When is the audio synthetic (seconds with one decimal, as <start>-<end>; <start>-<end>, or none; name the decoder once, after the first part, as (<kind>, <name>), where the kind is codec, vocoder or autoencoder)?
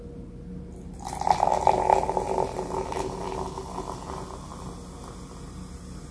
none